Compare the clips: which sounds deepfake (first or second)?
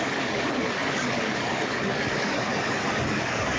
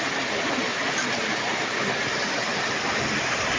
first